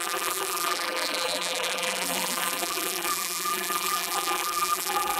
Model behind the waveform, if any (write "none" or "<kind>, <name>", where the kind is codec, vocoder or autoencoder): vocoder, BigVGAN v2